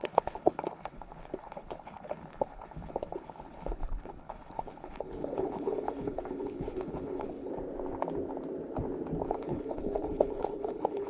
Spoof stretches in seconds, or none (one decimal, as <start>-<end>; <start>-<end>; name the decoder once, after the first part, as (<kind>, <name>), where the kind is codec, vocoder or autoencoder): 0.0-7.5 (codec, HILCodec); 9.3-11.1